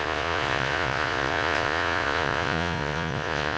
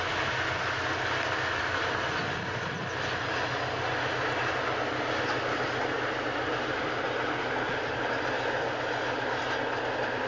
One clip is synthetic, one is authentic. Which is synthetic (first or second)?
first